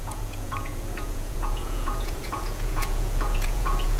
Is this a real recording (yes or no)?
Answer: no